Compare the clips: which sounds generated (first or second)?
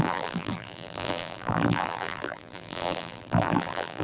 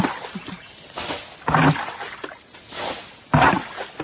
first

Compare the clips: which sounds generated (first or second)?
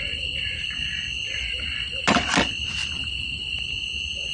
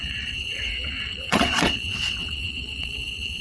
second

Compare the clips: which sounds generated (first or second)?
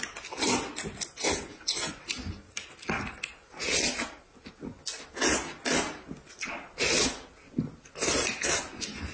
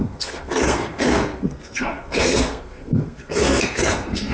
second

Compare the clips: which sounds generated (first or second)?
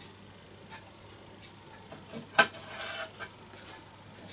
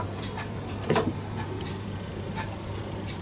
second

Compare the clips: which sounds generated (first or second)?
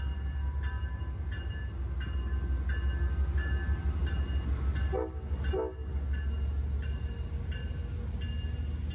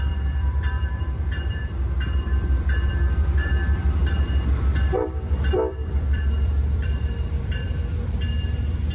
second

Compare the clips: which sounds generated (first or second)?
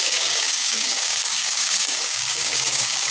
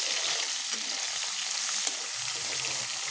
first